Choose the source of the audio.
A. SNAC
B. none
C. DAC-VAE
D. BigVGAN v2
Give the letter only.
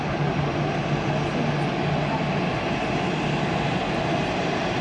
B